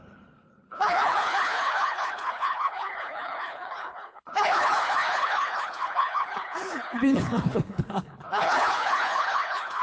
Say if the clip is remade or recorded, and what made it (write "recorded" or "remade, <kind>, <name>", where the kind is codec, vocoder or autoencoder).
remade, codec, HILCodec